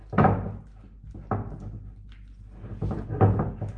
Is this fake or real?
real